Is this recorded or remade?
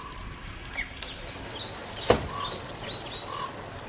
recorded